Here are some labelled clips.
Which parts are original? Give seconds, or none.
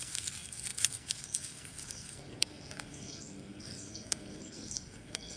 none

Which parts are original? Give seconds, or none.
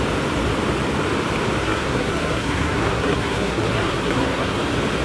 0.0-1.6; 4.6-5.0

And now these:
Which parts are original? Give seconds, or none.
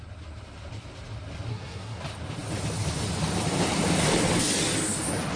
0.0-1.5; 2.0-5.4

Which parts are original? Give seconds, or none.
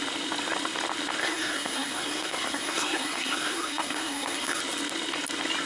0.0-1.2; 4.6-5.7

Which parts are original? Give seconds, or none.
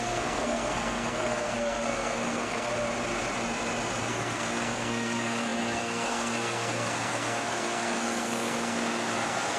2.7-4.0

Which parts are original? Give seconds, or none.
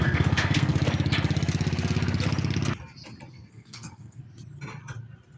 0.7-3.3; 4.2-5.4